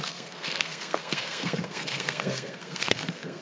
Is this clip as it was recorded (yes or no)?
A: no